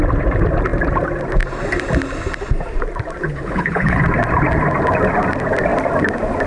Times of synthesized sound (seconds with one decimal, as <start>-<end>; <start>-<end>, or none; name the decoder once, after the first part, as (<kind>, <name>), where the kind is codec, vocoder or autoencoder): 3.2-4.0 (codec, HILCodec)